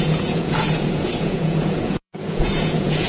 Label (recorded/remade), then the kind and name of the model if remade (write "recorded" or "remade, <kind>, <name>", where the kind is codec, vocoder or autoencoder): remade, vocoder, Vocos